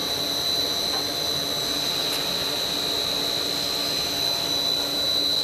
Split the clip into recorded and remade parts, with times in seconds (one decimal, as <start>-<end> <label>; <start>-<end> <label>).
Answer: 0.0-2.7 remade; 2.7-5.4 recorded